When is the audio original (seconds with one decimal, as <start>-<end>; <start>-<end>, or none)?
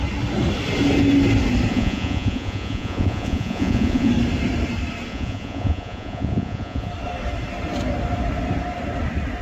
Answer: 0.0-1.7; 4.1-5.1; 6.9-9.4